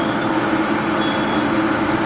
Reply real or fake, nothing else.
real